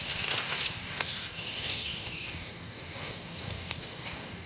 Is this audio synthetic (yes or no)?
yes